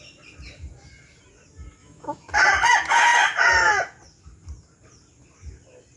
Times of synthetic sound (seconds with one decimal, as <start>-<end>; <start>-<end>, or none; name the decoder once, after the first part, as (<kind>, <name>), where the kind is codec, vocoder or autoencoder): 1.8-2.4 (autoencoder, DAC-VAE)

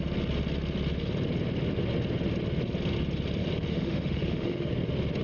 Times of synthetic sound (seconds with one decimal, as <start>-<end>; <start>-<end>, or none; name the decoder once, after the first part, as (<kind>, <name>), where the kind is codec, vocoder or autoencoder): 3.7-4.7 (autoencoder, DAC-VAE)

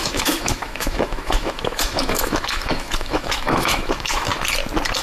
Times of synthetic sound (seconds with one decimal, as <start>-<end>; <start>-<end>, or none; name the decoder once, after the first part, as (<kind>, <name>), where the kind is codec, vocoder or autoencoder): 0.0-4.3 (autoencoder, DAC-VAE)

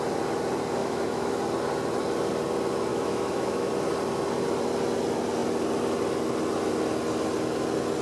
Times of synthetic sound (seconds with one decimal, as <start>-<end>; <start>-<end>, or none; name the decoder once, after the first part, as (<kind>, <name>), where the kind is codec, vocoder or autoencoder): 0.8-1.4 (autoencoder, DAC-VAE); 2.9-3.7

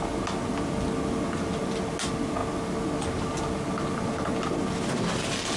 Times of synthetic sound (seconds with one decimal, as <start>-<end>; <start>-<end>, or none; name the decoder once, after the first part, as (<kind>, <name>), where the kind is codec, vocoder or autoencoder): none